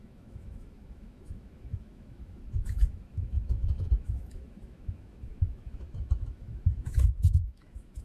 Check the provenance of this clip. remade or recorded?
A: remade